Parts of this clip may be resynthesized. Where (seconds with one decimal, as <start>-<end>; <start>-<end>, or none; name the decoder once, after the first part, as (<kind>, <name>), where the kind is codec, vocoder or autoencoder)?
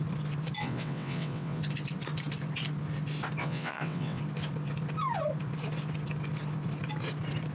0.6-1.6 (vocoder, WaveNeXt); 3.4-4.2